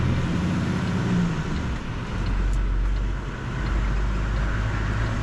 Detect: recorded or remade recorded